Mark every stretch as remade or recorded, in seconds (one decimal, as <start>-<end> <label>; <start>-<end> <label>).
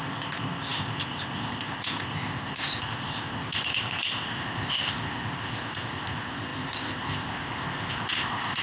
0.0-8.6 remade